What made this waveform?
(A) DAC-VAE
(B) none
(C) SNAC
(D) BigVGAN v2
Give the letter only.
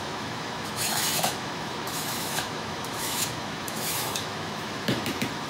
A